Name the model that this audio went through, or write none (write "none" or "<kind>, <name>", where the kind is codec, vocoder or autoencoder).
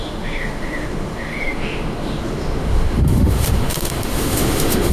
autoencoder, DAC-VAE